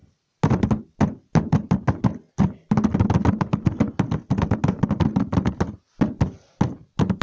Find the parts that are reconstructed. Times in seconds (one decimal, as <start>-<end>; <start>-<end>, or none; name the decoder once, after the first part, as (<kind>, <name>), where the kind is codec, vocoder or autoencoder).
none